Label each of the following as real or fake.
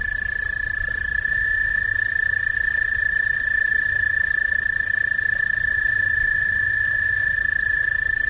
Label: real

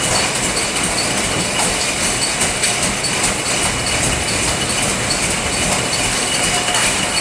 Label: real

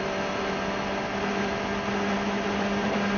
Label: real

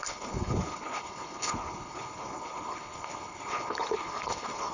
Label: fake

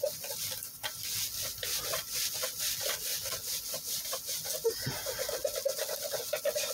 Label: real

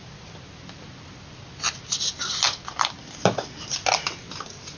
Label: real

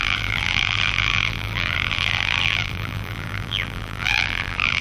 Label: fake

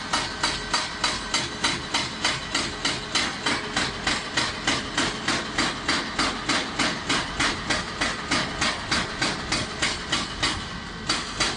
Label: real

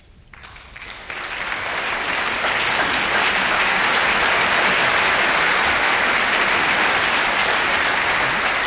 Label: real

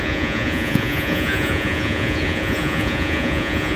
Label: fake